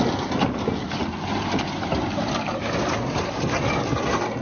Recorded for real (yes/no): yes